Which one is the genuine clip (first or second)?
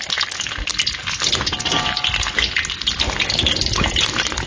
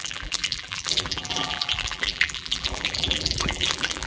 first